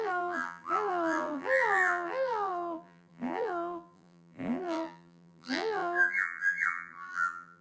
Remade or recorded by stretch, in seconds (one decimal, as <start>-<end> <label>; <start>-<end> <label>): 0.0-7.6 remade

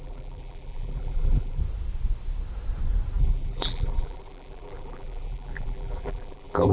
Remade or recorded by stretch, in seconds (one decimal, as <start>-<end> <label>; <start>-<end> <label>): 0.0-1.6 remade; 1.6-3.2 recorded; 3.2-6.7 remade

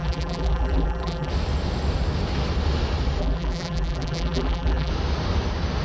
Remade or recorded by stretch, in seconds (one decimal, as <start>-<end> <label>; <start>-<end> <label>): 0.0-1.3 remade; 1.3-3.2 recorded; 3.2-4.9 remade; 4.9-5.8 recorded

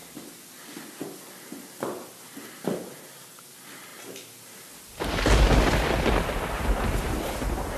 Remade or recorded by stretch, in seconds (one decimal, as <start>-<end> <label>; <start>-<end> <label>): 0.0-7.8 recorded

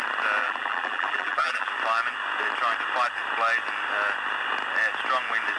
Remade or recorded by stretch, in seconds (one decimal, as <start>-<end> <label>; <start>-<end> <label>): 0.0-0.4 recorded; 0.4-1.7 remade; 1.7-5.6 recorded